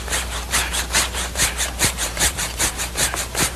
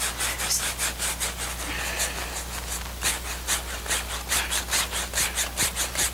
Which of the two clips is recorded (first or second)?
second